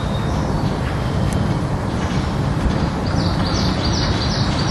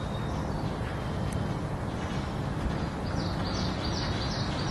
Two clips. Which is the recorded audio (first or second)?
second